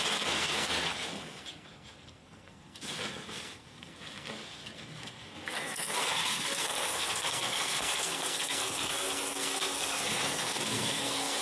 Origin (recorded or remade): remade